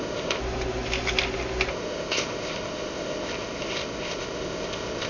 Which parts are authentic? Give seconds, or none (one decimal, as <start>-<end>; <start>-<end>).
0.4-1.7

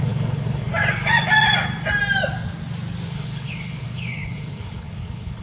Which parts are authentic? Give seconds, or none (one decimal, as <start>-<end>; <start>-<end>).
0.7-3.1

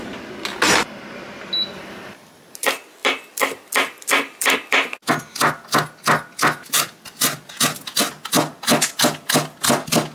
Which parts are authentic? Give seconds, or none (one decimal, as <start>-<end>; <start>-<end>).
0.0-3.0; 4.7-10.1

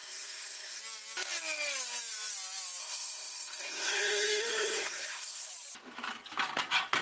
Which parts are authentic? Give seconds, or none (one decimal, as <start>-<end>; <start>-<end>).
0.8-2.8; 5.5-7.0

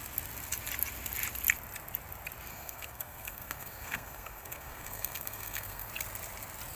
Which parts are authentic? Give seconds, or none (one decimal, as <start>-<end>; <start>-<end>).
0.0-2.5; 5.9-6.8

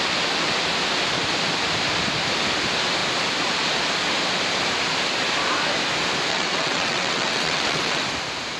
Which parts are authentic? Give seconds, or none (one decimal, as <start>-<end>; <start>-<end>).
0.0-6.3; 8.0-8.6

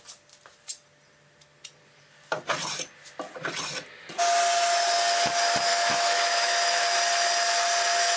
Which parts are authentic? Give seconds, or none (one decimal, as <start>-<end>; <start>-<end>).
0.0-5.7; 6.8-8.2